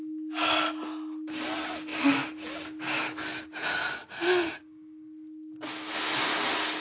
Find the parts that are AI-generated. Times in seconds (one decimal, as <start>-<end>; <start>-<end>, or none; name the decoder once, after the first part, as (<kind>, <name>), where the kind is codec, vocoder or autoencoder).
none

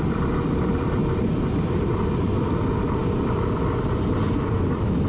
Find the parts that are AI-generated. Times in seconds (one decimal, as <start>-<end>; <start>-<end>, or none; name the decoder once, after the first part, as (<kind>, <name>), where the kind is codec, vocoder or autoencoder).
0.0-1.0 (vocoder, BigVGAN v2); 2.6-5.1